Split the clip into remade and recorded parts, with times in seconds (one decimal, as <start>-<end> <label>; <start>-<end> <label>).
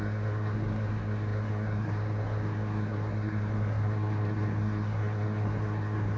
0.0-6.2 remade